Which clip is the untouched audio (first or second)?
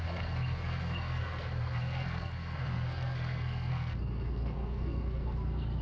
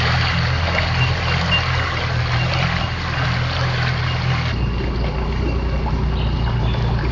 second